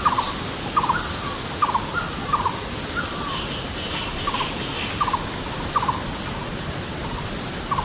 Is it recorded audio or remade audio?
recorded